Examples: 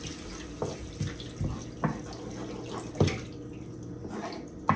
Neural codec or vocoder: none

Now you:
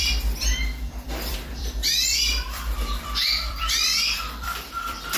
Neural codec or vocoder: vocoder, BigVGAN v2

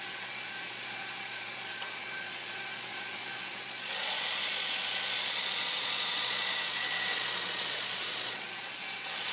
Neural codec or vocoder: vocoder, Vocos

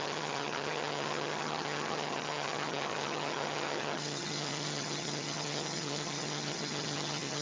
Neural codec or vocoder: vocoder, HiFi-GAN